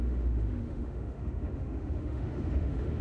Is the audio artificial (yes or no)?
yes